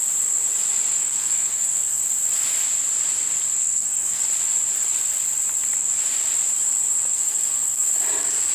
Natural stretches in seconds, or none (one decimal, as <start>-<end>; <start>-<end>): 0.0-1.0; 2.0-3.6; 4.2-7.1; 7.9-8.5